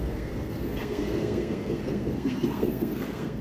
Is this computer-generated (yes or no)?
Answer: yes